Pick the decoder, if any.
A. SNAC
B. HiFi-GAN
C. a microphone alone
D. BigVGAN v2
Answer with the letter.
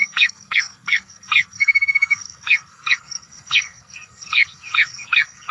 A